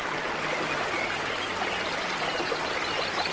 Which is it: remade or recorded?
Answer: recorded